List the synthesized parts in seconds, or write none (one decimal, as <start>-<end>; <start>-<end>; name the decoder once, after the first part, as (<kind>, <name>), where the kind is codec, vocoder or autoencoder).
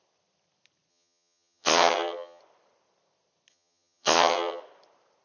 0.9-2.4 (vocoder, HiFi-GAN); 3.5-4.6